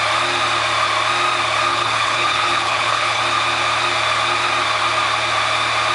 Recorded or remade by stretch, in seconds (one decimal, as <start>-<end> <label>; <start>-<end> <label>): 0.0-1.7 recorded; 1.7-3.2 remade; 3.2-5.9 recorded